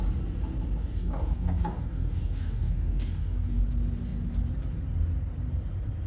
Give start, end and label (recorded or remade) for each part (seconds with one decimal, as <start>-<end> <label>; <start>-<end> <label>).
0.0-0.8 recorded; 0.8-3.6 remade; 3.6-6.1 recorded